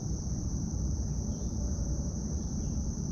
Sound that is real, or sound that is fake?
fake